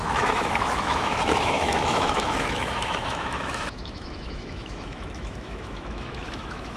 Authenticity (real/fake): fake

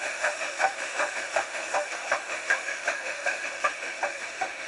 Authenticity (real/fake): fake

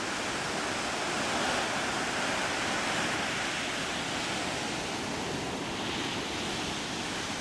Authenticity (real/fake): real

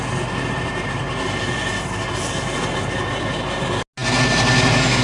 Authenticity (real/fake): real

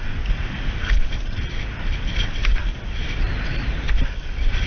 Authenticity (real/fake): real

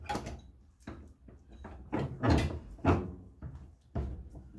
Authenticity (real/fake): real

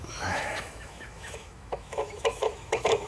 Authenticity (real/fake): fake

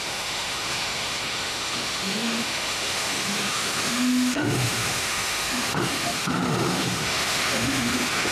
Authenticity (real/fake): fake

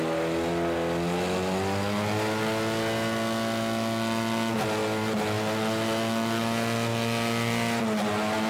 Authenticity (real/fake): real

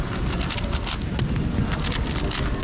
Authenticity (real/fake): real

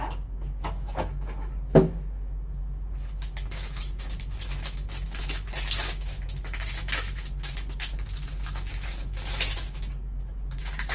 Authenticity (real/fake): fake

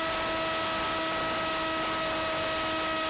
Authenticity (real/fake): real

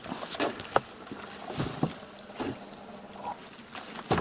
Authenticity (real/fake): real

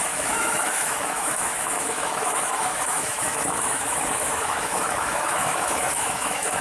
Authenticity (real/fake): fake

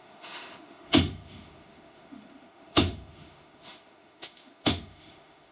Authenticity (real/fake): fake